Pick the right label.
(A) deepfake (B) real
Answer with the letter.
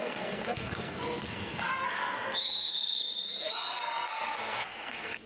A